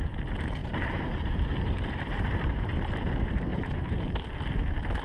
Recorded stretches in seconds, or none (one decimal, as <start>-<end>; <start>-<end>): 0.0-0.6; 3.1-3.5; 4.1-5.0